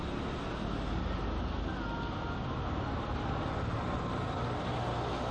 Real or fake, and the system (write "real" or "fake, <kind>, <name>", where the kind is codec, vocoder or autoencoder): real